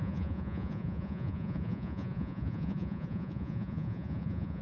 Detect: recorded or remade remade